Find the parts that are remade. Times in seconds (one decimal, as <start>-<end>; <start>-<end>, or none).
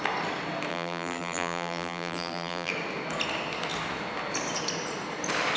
0.7-2.7